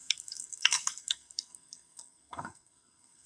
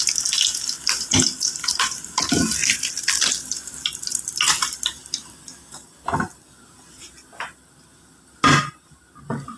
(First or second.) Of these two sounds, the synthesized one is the first